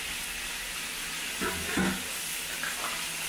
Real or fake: real